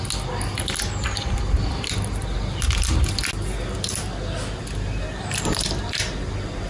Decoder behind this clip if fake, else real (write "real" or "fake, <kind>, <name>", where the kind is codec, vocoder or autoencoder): real